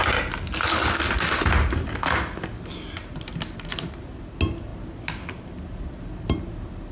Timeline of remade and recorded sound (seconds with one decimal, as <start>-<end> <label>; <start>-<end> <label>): 0.0-6.9 recorded